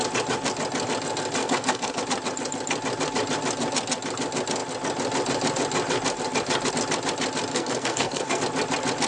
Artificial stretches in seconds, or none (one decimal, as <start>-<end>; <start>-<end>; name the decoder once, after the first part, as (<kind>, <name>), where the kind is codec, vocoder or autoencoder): 1.4-2.0 (codec, SNAC); 7.5-8.4